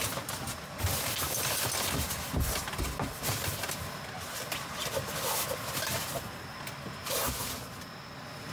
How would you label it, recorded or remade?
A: recorded